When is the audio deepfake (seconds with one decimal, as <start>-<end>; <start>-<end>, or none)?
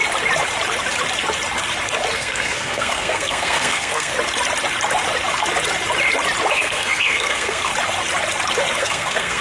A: 2.1-4.1; 6.5-7.7; 8.8-9.4